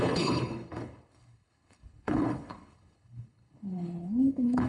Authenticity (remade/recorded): remade